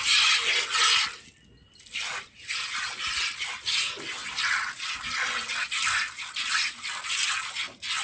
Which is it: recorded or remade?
recorded